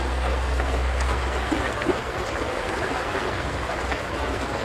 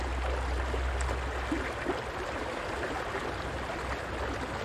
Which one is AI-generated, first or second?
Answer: first